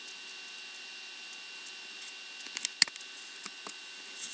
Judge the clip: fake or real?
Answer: real